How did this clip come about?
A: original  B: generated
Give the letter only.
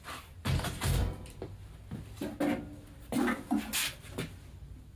A